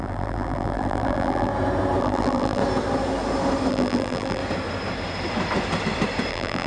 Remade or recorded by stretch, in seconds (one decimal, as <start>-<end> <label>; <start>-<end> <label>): 0.0-1.5 remade; 1.5-2.0 recorded; 2.0-2.6 remade; 2.6-3.7 recorded; 3.7-4.4 remade; 4.4-6.3 recorded; 6.3-6.7 remade